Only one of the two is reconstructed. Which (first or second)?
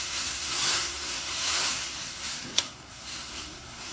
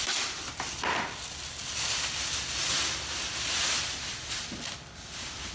first